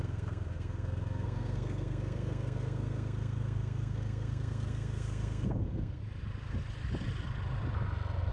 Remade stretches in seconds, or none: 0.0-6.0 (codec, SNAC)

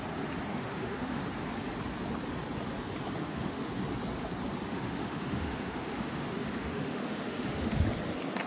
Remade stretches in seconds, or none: 0.5-1.2 (autoencoder, DAC-VAE); 3.2-3.7; 4.7-7.8

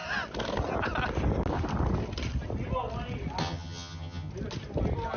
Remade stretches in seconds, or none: 3.4-4.3 (vocoder, HiFi-GAN)

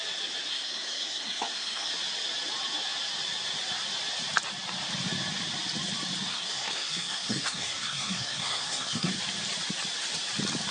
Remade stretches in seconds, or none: 0.5-1.9 (codec, SNAC); 6.3-9.1

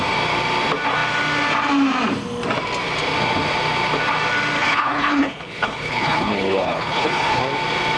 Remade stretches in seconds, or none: 4.6-7.4 (codec, HILCodec)

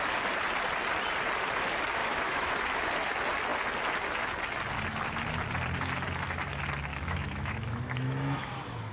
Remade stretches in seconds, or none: 2.0-2.5 (autoencoder, DAC-VAE); 6.9-8.5

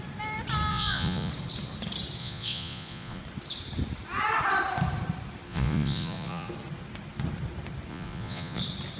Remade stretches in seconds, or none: 0.7-1.3 (vocoder, Vocos); 2.2-3.2; 5.5-6.5; 7.9-8.6